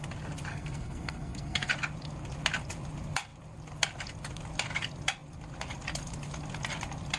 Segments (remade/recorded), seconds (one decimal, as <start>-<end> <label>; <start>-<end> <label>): 0.0-0.5 recorded; 0.5-1.7 remade; 1.7-7.2 recorded